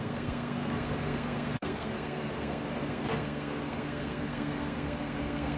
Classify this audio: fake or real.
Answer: fake